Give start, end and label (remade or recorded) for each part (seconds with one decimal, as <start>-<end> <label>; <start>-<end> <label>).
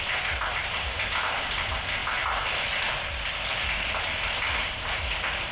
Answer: 0.0-5.5 recorded